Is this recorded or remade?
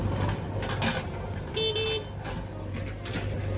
recorded